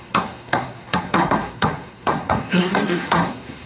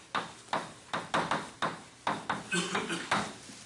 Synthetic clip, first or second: first